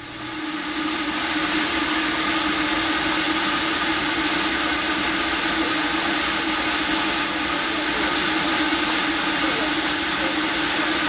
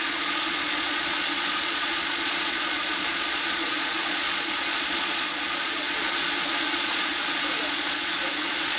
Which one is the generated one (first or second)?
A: second